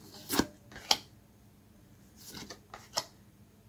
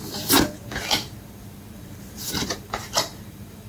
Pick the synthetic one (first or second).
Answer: second